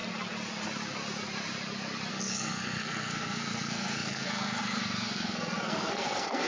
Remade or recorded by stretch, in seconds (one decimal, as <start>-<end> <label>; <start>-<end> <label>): 0.0-2.1 recorded; 2.1-6.5 remade